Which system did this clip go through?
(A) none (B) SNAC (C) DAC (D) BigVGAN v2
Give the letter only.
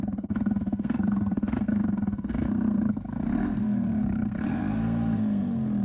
B